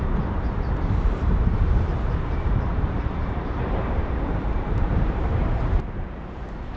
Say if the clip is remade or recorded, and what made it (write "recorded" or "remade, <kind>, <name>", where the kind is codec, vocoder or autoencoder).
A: remade, vocoder, BigVGAN v2